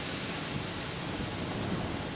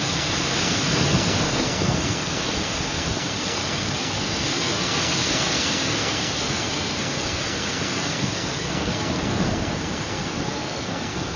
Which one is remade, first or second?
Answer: second